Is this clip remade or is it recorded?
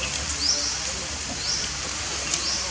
recorded